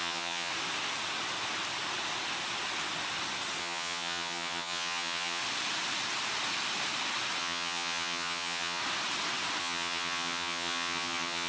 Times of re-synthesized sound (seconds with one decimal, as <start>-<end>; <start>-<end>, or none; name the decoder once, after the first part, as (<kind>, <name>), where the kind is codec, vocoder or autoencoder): 0.0-0.5 (vocoder, HiFi-GAN); 3.6-5.4; 7.4-8.8; 9.6-11.5